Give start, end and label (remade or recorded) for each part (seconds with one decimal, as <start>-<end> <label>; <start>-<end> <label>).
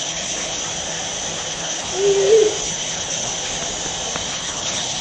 0.0-0.6 remade; 0.6-1.5 recorded; 1.5-1.9 remade; 1.9-2.6 recorded; 2.6-3.3 remade; 3.3-4.3 recorded; 4.3-5.0 remade